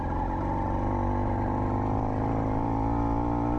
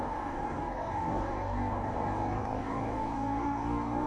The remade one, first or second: second